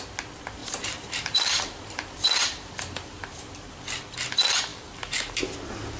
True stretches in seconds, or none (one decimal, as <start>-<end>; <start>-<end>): 0.0-0.6; 3.4-4.7; 5.4-6.0